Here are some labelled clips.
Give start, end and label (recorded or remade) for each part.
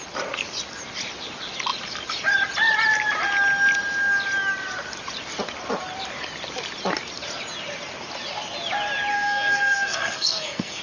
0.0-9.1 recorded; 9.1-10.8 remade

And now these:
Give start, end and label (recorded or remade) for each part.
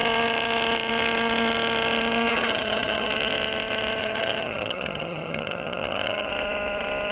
0.0-2.3 recorded; 2.3-3.1 remade; 3.1-4.0 recorded; 4.0-6.3 remade; 6.3-7.1 recorded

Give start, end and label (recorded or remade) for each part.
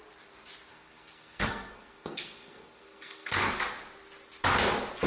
0.0-0.7 recorded; 0.7-3.5 remade; 3.5-5.1 recorded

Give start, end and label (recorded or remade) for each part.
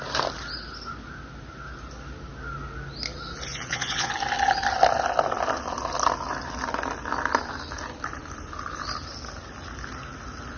0.0-3.5 recorded; 3.5-4.1 remade; 4.1-10.6 recorded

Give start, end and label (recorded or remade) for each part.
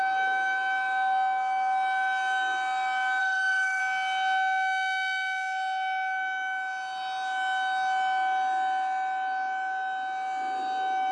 0.0-3.2 recorded; 3.2-3.8 remade; 3.8-11.1 recorded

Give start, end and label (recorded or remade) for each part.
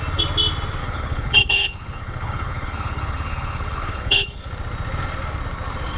0.0-0.8 recorded; 0.8-4.4 remade; 4.4-6.0 recorded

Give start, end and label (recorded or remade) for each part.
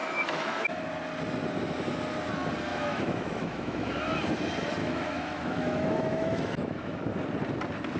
0.0-0.9 remade; 0.9-2.7 recorded; 2.7-4.0 remade; 4.0-4.8 recorded; 4.8-7.1 remade; 7.1-8.0 recorded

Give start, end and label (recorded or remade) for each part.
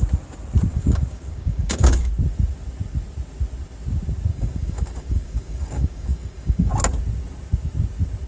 0.0-0.7 recorded; 0.7-2.1 remade; 2.1-4.3 recorded; 4.3-6.7 remade; 6.7-8.3 recorded